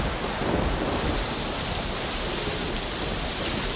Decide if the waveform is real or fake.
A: real